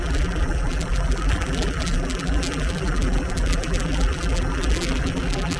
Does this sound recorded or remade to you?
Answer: remade